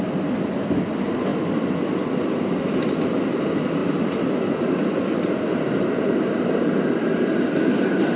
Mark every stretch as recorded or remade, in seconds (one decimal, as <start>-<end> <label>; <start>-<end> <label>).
0.0-8.2 recorded